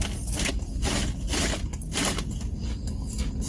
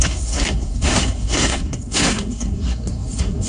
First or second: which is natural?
first